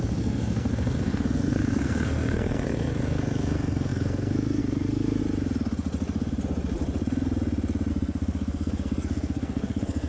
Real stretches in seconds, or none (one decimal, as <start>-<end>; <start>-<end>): 5.2-7.9

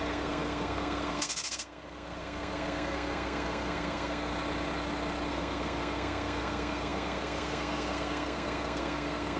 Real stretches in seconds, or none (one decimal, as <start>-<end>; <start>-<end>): 4.3-5.3

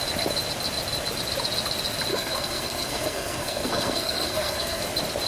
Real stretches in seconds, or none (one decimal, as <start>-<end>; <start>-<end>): 0.0-2.1; 4.8-5.3

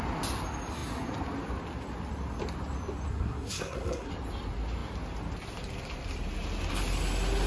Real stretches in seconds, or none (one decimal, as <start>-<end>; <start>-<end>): 0.0-3.1; 4.1-7.5